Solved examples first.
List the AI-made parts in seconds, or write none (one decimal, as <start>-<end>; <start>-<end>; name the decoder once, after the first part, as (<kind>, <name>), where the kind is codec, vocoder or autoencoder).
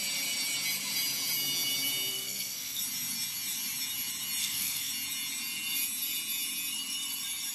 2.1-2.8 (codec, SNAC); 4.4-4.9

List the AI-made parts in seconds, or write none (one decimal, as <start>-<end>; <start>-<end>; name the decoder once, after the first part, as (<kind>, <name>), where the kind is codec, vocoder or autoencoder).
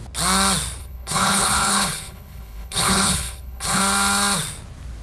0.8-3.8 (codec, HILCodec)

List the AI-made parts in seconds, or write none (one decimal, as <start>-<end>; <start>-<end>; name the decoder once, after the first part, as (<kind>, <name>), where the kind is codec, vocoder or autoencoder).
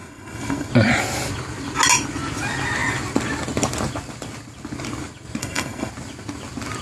0.0-0.7 (codec, SNAC); 5.4-5.9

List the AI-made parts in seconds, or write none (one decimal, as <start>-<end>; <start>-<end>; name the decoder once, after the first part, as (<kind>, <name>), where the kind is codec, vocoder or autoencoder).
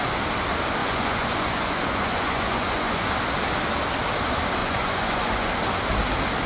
0.8-3.1 (vocoder, Vocos); 4.6-5.5